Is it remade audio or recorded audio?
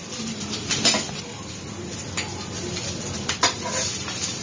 recorded